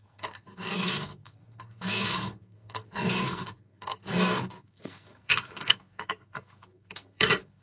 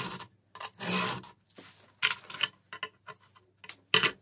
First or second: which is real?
second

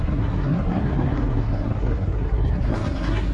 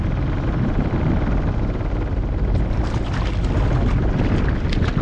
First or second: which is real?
second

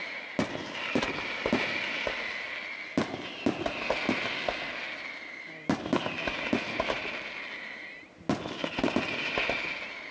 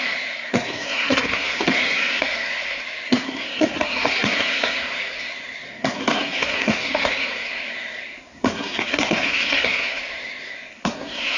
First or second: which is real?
first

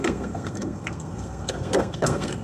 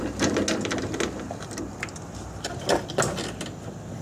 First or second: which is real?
second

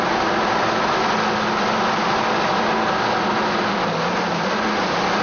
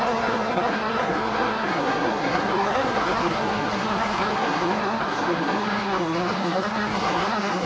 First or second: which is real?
first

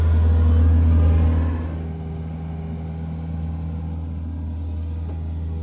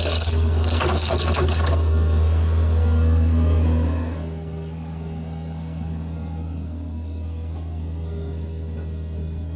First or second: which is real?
first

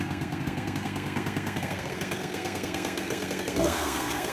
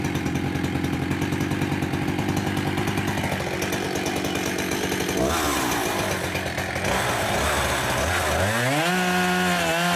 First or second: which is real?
second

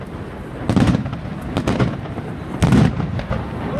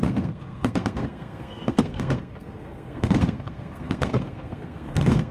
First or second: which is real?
first